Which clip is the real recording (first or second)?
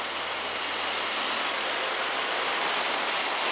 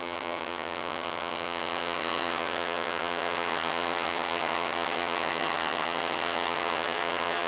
first